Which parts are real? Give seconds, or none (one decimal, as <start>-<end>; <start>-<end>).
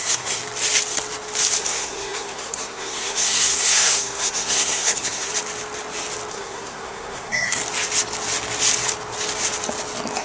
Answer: 0.4-1.6; 5.3-6.3; 7.6-10.2